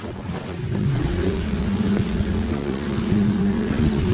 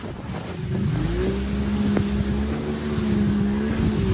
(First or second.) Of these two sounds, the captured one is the second